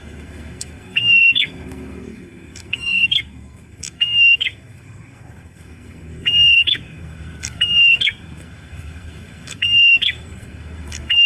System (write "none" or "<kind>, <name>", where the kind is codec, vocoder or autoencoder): codec, SNAC